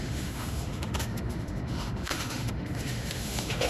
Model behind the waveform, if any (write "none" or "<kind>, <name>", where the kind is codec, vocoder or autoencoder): autoencoder, DAC-VAE